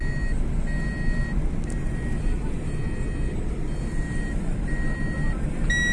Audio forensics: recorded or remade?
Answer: recorded